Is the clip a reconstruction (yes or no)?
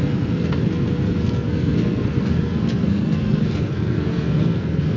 yes